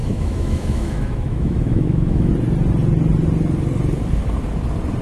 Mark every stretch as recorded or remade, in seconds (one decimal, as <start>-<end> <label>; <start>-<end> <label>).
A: 0.0-2.3 remade; 2.3-5.0 recorded